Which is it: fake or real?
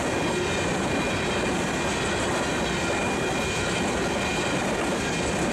real